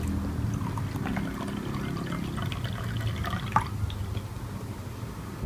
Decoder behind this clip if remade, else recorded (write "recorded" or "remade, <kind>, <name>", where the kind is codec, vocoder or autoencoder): recorded